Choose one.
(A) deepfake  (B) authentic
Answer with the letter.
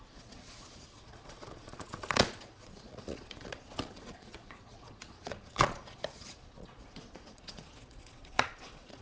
A